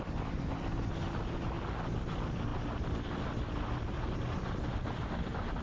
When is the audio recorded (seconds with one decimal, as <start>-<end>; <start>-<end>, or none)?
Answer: 0.0-5.6